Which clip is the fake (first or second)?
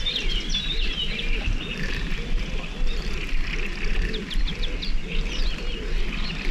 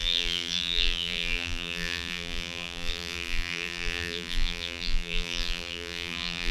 second